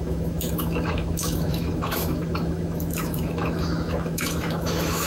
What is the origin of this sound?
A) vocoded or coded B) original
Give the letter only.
A